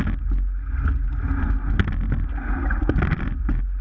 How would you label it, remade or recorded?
recorded